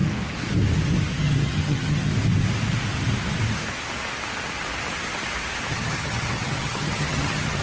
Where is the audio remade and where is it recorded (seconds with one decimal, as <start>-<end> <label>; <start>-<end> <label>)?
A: 0.0-1.2 recorded; 1.2-2.1 remade; 2.1-5.7 recorded; 5.7-7.6 remade